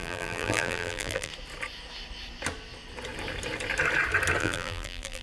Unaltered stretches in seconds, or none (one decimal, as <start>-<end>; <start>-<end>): 1.3-4.4